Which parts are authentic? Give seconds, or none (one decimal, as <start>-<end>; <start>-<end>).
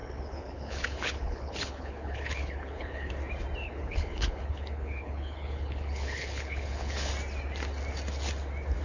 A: 3.1-3.6; 7.1-8.8